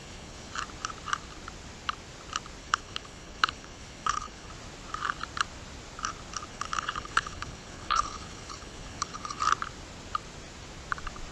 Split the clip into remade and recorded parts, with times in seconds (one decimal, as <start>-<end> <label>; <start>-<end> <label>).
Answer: 0.0-0.5 remade; 0.5-2.6 recorded; 2.6-4.5 remade; 4.5-6.5 recorded; 6.5-9.4 remade; 9.4-11.3 recorded

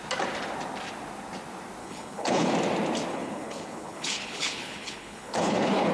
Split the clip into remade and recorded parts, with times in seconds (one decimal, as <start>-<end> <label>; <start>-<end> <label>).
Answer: 0.0-1.8 recorded; 1.8-2.5 remade; 2.5-3.1 recorded; 3.1-5.9 remade